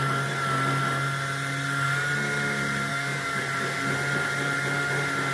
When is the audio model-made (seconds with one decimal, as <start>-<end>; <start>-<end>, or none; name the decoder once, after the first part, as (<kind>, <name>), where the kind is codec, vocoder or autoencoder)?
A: 2.9-3.4 (codec, DAC)